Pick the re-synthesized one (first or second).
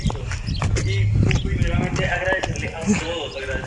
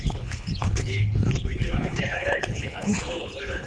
second